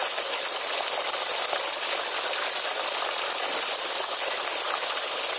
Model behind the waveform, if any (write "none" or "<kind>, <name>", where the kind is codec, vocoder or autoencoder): none